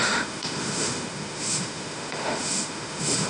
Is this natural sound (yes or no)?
no